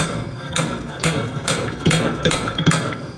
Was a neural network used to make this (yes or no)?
yes